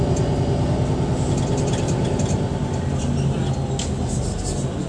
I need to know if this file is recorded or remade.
recorded